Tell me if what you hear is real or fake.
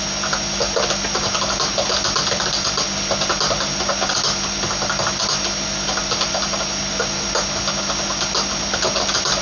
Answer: real